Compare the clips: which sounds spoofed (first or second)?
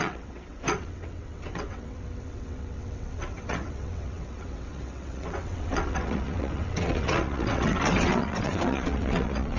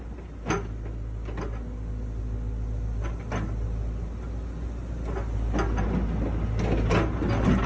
first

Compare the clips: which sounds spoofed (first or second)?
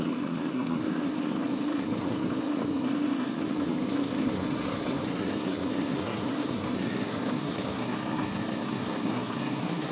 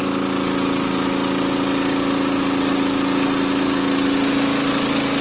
first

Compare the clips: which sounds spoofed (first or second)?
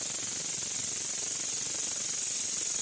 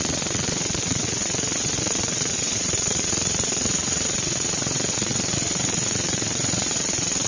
second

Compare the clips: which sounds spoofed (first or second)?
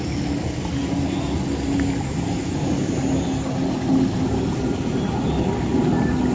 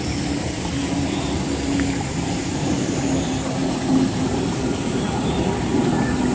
second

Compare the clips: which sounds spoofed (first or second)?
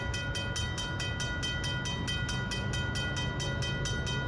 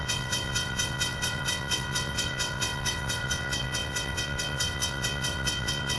second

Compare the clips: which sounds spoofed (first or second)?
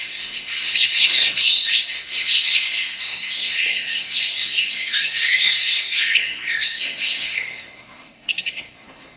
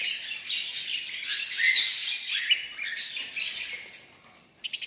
first